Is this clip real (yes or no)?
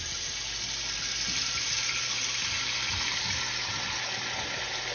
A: yes